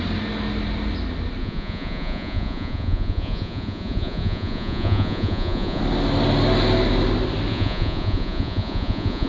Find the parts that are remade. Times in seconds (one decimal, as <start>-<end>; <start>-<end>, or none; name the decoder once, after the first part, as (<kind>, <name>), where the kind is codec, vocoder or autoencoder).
1.4-5.8 (vocoder, Vocos); 7.5-9.3